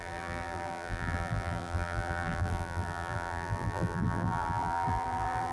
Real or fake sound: fake